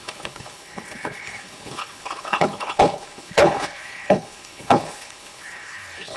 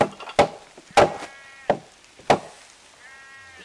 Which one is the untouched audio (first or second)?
second